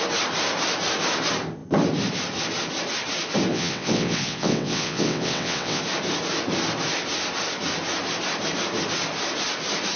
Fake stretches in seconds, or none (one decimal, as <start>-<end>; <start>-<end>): 3.5-5.8